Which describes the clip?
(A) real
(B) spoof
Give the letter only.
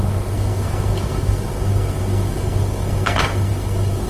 B